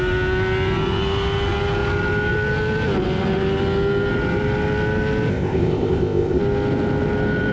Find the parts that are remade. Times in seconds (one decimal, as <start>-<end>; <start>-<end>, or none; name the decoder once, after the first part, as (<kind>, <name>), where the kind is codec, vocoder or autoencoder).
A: 5.3-6.4 (codec, ZipCodec)